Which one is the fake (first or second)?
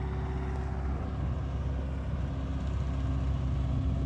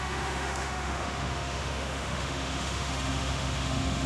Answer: second